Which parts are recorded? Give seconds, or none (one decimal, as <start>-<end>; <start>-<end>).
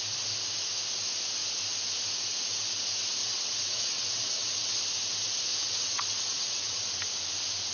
0.0-3.2; 4.8-5.6; 6.9-7.7